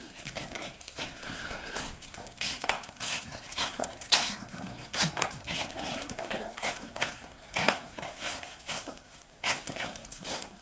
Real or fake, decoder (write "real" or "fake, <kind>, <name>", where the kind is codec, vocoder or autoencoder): fake, codec, SNAC